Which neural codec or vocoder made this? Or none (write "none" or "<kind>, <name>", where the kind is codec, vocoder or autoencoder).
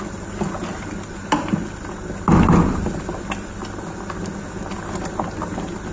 none